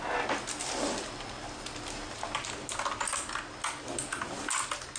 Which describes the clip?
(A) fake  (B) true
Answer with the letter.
B